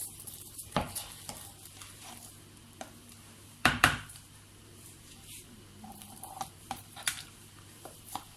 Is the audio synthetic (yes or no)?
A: yes